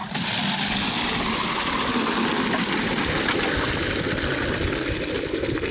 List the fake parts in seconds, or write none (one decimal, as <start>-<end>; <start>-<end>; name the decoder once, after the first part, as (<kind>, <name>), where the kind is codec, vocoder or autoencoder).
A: none